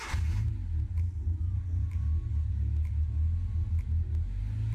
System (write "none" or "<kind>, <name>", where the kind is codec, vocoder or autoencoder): none